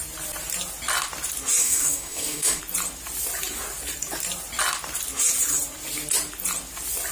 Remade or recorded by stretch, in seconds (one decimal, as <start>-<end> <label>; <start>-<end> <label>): 0.0-1.6 recorded; 1.6-2.6 remade; 2.6-7.1 recorded